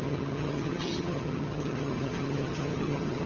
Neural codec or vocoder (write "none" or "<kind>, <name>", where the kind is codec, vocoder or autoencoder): vocoder, HiFi-GAN